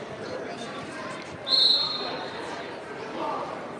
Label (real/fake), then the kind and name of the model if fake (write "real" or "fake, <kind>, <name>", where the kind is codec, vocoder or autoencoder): fake, vocoder, BigVGAN v2